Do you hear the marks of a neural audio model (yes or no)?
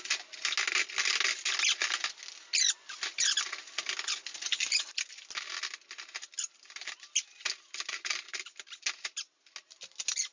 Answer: no